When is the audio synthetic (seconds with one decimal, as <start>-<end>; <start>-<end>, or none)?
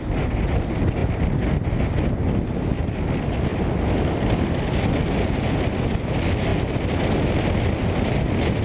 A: none